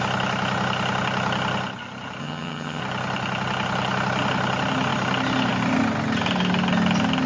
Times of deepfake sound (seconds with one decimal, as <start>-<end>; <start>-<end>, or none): 2.2-2.8